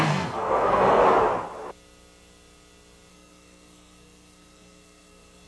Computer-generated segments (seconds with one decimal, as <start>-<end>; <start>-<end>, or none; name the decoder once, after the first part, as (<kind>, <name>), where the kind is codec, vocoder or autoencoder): 0.0-1.0 (codec, SNAC); 3.1-5.5